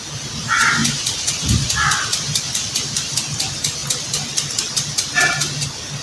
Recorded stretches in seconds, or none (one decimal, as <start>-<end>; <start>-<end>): 0.0-6.0